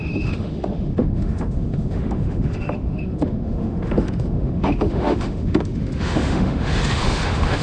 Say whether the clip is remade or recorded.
remade